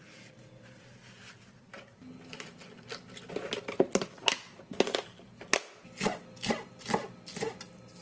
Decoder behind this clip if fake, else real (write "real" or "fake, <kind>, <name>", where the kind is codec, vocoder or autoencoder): real